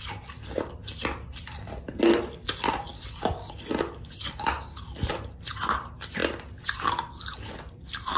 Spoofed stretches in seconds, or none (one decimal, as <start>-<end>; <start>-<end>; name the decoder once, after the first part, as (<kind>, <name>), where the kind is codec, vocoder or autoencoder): 0.0-0.8 (vocoder, BigVGAN v2); 2.5-2.9; 5.1-6.2; 7.5-8.2